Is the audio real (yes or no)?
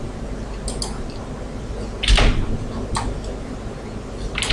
yes